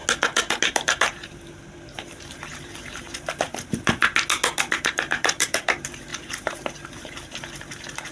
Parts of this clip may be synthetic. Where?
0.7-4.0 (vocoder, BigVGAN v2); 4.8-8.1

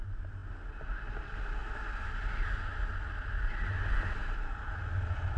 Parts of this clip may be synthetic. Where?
none